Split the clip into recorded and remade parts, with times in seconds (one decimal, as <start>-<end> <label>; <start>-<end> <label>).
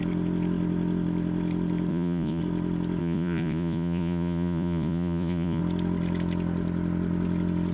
0.0-1.9 recorded; 1.9-2.4 remade; 2.4-3.0 recorded; 3.0-5.6 remade; 5.6-7.7 recorded